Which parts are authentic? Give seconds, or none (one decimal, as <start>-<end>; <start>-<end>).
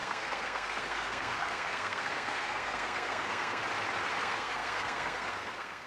3.6-4.1